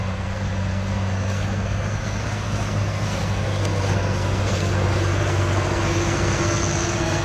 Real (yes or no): no